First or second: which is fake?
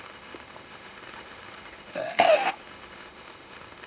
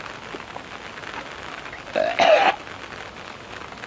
first